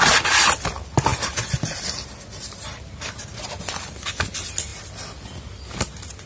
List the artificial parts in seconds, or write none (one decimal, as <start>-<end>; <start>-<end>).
none